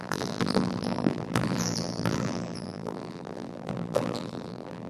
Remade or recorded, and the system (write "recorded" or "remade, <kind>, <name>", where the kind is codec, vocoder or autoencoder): remade, vocoder, BigVGAN v2